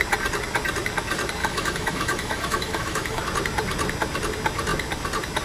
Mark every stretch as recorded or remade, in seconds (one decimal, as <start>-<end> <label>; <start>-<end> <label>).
0.0-1.4 recorded; 1.4-3.2 remade; 3.2-5.4 recorded